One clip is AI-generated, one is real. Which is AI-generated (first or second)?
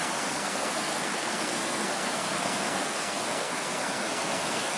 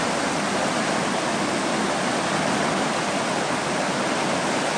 first